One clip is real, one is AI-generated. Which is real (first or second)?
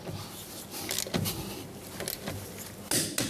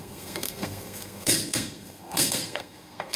first